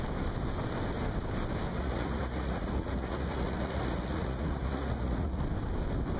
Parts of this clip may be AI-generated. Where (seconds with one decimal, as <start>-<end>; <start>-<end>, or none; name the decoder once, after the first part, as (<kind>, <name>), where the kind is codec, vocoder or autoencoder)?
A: 1.7-5.4 (vocoder, Vocos)